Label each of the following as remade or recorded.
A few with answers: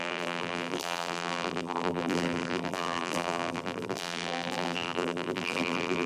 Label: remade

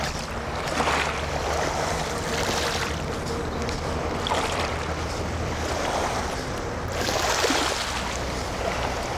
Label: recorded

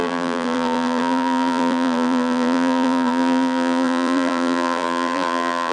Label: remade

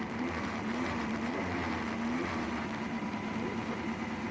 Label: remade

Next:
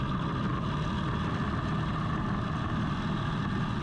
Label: recorded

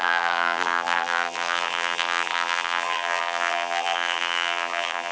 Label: remade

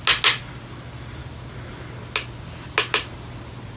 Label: recorded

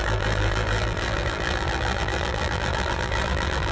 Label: remade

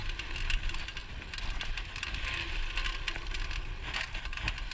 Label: recorded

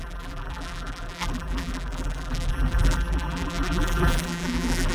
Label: remade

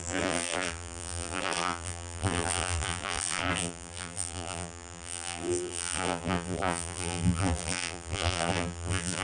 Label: remade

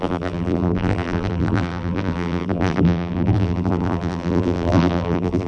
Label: remade